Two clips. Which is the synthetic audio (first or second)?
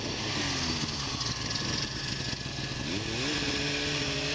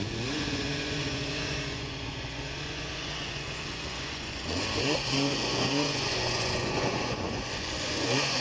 second